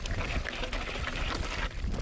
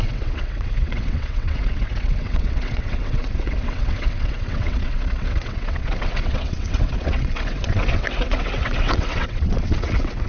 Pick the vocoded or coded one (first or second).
second